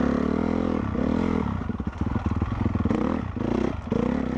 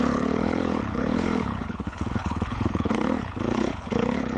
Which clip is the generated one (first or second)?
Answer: second